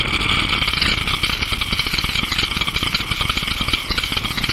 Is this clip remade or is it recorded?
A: recorded